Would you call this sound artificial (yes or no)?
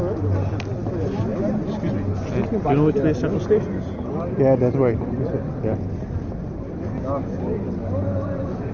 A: no